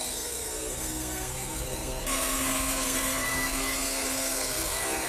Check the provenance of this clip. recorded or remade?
remade